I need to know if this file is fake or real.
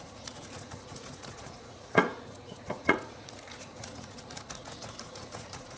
fake